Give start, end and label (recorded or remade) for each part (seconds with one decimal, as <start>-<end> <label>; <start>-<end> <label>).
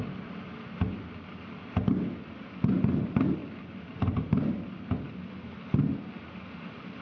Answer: 0.0-3.4 recorded; 3.4-5.1 remade; 5.1-7.0 recorded